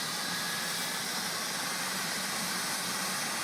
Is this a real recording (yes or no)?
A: yes